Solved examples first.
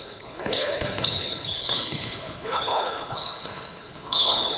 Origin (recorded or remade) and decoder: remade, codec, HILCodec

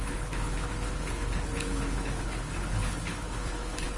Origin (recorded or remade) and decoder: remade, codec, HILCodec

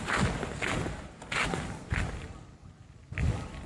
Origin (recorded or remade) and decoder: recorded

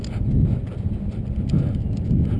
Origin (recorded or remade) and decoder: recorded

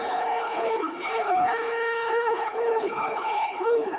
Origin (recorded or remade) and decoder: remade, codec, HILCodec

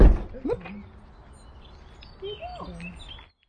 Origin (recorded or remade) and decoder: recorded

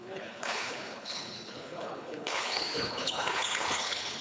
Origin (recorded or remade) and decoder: remade, codec, HILCodec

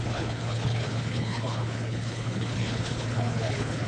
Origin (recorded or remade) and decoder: remade, codec, HILCodec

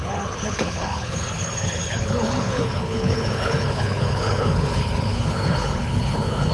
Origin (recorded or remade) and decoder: remade, codec, HILCodec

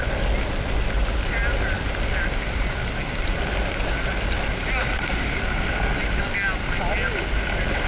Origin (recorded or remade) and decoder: recorded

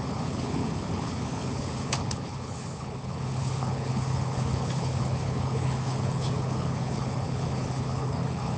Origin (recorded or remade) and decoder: remade, codec, HILCodec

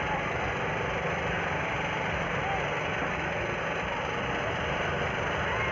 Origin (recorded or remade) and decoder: recorded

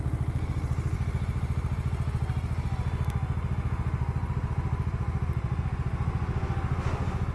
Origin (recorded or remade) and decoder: recorded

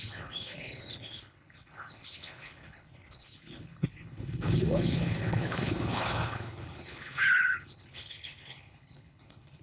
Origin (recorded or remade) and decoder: remade, codec, HILCodec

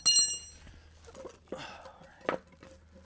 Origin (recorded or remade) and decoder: recorded